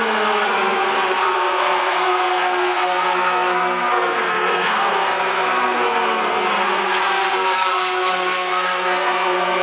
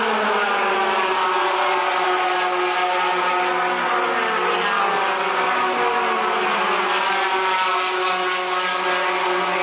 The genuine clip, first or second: second